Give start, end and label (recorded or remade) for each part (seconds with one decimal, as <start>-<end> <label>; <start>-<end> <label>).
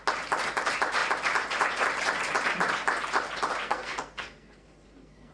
0.0-3.6 recorded; 3.6-5.3 remade